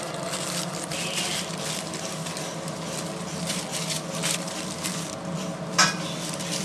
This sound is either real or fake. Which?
real